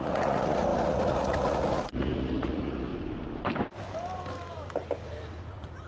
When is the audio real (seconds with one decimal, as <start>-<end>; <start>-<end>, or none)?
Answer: 2.9-5.5